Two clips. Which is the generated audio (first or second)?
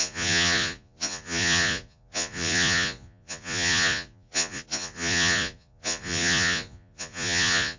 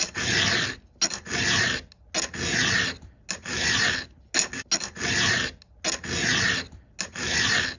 first